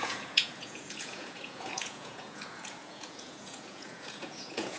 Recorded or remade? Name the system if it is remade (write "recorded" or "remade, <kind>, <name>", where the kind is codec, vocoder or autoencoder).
remade, vocoder, Vocos